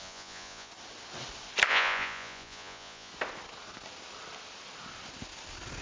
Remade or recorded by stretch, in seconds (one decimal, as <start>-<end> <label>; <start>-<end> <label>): 0.0-0.7 remade; 0.7-1.7 recorded; 1.7-3.1 remade; 3.1-5.8 recorded